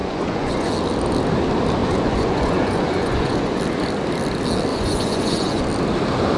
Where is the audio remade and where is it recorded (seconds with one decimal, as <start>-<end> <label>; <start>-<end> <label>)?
0.0-0.7 remade; 0.7-1.8 recorded; 1.8-3.6 remade; 3.6-4.7 recorded; 4.7-5.6 remade; 5.6-6.4 recorded